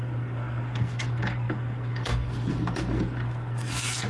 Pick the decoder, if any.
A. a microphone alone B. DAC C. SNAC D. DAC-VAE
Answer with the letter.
C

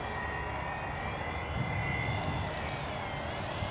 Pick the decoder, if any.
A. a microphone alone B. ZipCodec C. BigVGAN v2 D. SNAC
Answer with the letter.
A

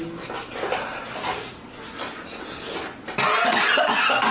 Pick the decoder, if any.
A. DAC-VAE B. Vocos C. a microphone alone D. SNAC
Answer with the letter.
C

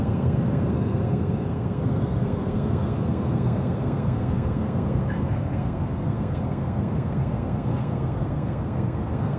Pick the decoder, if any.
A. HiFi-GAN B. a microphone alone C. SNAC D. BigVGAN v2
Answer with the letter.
C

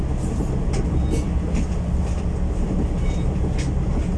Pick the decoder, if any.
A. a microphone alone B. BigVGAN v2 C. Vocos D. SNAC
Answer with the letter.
A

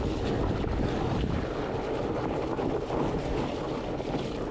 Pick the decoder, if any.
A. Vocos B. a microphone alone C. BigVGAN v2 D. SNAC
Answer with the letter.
B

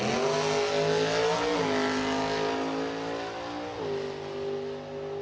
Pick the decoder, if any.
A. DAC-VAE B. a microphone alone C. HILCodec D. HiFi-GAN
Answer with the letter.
B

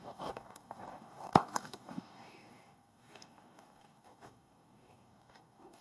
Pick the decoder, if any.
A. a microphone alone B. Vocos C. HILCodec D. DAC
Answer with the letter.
D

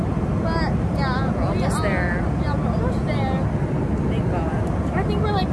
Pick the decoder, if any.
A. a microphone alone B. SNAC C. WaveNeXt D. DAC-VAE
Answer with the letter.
A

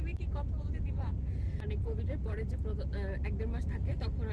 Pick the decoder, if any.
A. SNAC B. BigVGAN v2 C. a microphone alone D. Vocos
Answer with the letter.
C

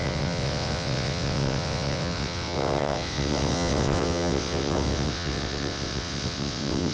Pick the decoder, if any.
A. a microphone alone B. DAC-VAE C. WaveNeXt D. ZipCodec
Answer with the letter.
C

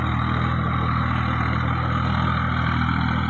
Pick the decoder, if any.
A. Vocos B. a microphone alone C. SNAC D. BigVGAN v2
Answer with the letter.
B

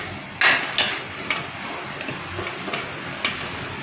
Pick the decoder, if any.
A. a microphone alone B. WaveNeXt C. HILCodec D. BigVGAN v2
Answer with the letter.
A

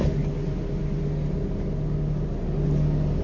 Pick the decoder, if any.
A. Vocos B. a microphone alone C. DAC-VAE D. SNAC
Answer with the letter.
B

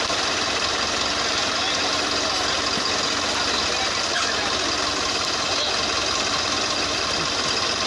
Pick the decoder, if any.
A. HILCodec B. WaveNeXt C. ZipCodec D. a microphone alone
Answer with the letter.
D